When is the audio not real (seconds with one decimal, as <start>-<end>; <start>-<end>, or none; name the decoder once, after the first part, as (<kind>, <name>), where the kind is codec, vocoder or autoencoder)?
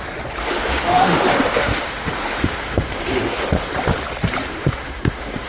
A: 0.4-3.7 (autoencoder, DAC-VAE); 4.5-5.5